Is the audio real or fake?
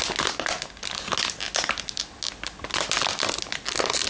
real